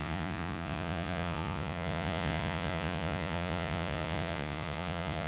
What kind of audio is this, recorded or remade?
remade